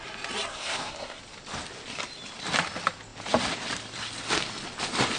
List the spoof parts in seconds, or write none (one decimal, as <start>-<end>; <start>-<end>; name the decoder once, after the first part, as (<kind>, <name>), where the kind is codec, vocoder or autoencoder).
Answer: 0.5-1.2 (codec, SNAC)